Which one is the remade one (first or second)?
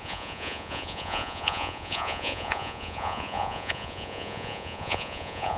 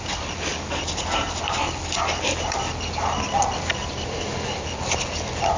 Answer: first